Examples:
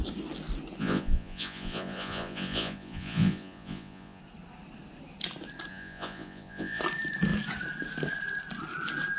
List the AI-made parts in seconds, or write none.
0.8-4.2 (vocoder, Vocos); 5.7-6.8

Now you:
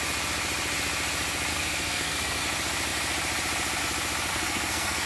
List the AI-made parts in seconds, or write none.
1.5-2.4 (codec, SNAC); 4.3-5.1

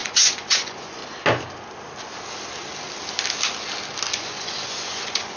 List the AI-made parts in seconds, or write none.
0.0-1.0 (vocoder, Vocos); 4.1-5.4

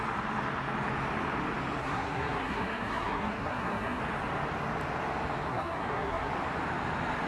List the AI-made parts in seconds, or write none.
1.8-4.0 (codec, SNAC); 5.5-6.3

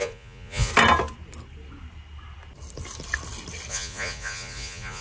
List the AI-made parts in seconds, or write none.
0.0-0.7 (vocoder, Vocos); 3.7-5.0

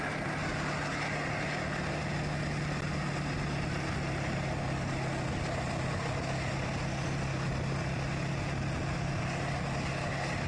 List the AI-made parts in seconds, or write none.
none